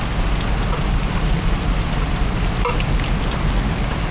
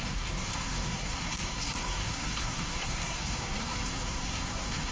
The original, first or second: first